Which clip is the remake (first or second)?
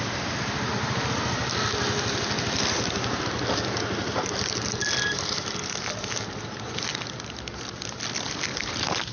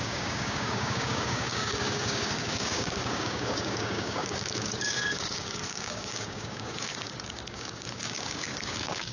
second